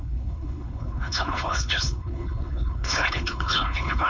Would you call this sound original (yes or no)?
no